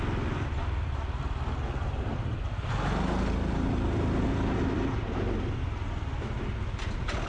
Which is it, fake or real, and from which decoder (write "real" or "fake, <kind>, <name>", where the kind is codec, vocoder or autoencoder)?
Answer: real